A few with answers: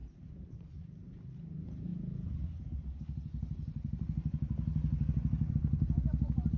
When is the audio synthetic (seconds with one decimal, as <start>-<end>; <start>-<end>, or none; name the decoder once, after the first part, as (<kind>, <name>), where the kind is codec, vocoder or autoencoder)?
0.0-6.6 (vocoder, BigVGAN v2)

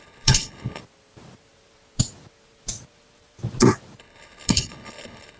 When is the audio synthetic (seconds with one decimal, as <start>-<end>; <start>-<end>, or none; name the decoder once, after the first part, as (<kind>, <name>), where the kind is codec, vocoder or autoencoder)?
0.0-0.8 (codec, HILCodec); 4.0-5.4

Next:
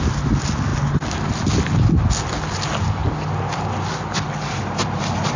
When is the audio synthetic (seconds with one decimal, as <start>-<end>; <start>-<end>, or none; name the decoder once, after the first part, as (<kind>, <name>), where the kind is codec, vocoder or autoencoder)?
none

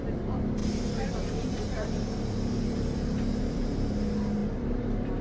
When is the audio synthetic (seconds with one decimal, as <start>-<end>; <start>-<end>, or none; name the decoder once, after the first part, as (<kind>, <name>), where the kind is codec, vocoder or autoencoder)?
none

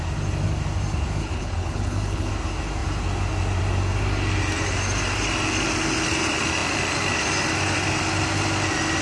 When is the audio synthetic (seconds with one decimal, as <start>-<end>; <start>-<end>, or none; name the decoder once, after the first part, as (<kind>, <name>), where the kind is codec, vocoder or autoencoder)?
1.2-2.3 (codec, HILCodec)

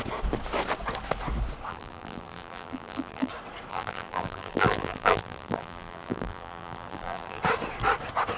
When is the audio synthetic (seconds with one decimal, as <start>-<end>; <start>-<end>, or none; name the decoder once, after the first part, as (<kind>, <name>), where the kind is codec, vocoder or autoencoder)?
1.7-3.3 (vocoder, BigVGAN v2); 3.7-7.4

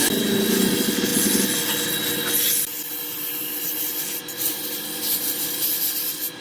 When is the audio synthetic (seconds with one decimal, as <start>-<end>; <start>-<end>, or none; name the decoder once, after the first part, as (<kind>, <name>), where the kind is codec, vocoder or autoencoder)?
none